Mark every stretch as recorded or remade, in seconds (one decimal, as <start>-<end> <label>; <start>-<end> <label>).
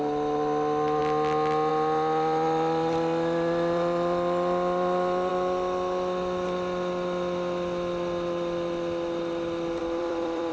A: 0.0-1.0 remade; 1.0-1.7 recorded; 1.7-5.3 remade; 5.3-9.8 recorded; 9.8-10.5 remade